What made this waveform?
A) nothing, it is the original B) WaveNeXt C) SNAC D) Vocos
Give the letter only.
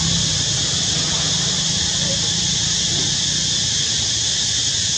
A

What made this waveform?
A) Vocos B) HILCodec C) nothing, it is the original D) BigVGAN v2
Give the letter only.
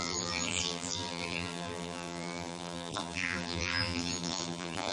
D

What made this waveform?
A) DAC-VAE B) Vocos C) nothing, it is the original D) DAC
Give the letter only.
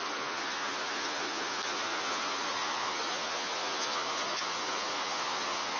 B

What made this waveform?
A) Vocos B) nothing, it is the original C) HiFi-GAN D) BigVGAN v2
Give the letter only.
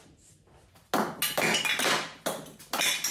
B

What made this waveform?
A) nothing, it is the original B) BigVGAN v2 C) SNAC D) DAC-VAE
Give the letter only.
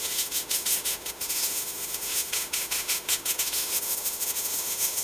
D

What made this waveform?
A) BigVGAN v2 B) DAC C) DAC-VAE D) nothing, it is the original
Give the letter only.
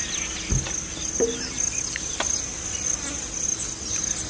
D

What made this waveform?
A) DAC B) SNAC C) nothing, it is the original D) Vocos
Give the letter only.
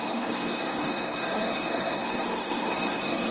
B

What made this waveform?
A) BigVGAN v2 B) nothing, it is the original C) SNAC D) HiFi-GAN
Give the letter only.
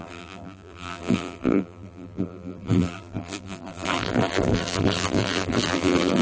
A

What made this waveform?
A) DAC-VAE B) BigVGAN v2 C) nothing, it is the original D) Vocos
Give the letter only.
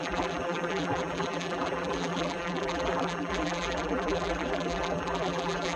B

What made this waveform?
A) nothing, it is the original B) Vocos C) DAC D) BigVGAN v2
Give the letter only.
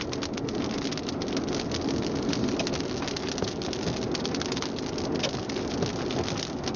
A